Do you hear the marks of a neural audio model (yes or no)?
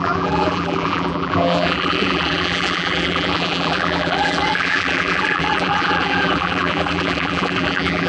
yes